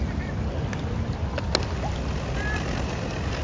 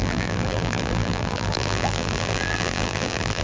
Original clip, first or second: first